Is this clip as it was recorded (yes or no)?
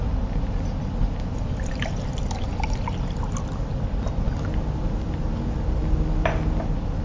yes